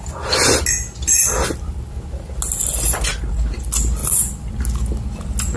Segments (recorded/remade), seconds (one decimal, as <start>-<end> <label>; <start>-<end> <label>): 0.0-5.6 recorded